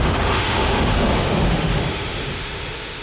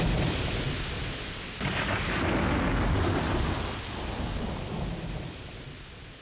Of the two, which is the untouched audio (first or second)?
second